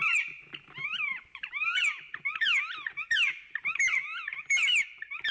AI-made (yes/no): yes